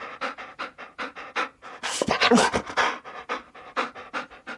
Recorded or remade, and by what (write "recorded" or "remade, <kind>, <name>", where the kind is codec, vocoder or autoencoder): recorded